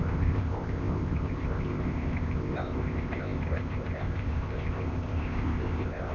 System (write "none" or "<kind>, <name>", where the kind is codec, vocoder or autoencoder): codec, ZipCodec